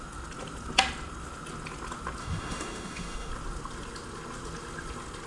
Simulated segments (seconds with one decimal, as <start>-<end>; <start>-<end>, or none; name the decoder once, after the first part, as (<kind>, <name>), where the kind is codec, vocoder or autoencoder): 2.2-3.3 (autoencoder, DAC-VAE)